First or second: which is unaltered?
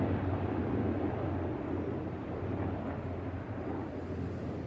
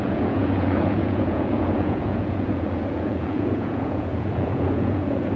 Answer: first